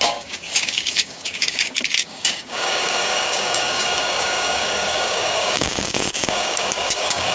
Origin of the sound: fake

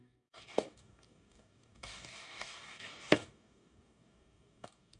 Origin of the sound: fake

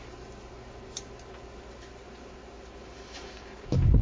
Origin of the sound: real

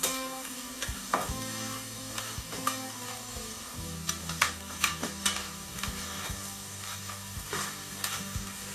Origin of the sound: fake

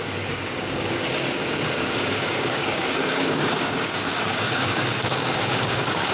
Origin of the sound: fake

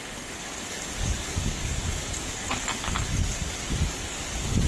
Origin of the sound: fake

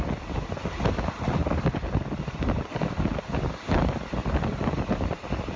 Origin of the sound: real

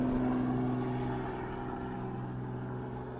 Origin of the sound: real